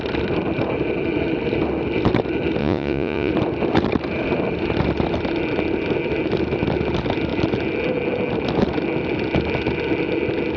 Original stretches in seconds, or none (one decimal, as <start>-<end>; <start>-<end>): 0.0-2.6; 3.3-10.6